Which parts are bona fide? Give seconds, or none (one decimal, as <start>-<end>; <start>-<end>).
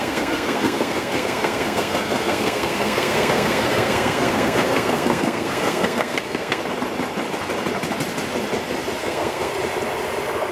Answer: 6.6-9.0; 9.5-10.5